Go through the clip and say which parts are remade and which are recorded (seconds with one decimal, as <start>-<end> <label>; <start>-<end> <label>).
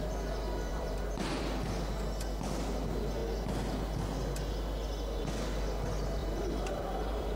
0.0-0.7 recorded; 0.7-1.4 remade; 1.4-6.2 recorded; 6.2-7.4 remade